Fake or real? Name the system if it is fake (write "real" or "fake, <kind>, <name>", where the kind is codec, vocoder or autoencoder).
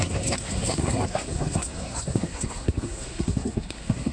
fake, codec, SNAC